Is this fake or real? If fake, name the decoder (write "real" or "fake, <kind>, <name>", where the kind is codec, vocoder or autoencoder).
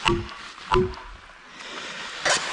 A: real